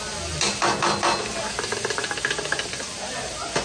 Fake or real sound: real